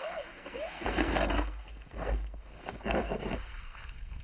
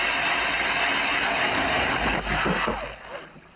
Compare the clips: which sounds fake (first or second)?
first